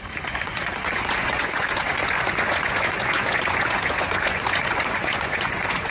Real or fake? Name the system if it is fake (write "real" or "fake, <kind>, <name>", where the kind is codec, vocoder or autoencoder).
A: fake, vocoder, Vocos